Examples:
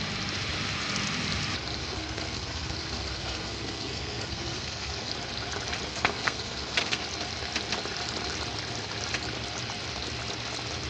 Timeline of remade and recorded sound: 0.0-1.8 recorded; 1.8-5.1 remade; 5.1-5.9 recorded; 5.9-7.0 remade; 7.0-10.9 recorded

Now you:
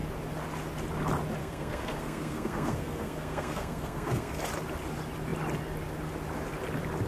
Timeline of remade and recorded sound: 0.0-1.4 recorded; 1.4-4.3 remade; 4.3-7.1 recorded

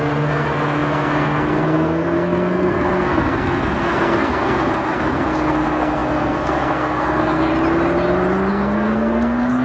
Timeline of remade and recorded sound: 0.0-7.5 remade; 7.5-8.5 recorded; 8.5-9.6 remade

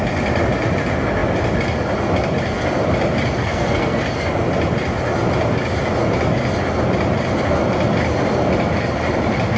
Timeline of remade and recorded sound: 0.0-3.4 recorded; 3.4-4.0 remade; 4.0-9.6 recorded

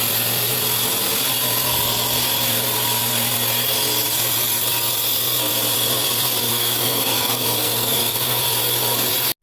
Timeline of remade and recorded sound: 0.0-6.5 recorded; 6.5-8.4 remade; 8.4-9.4 recorded

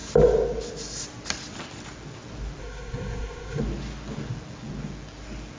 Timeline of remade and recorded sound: 0.0-2.6 recorded; 2.6-3.6 remade; 3.6-5.6 recorded

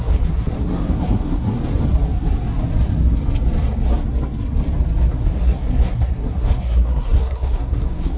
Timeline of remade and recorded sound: 0.0-1.6 remade; 1.6-5.1 recorded; 5.1-8.2 remade

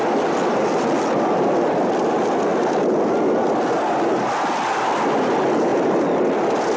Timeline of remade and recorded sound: 0.0-6.8 recorded